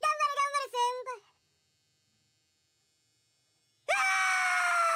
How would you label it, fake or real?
real